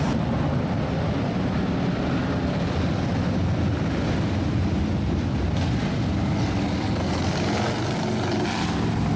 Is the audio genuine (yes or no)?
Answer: yes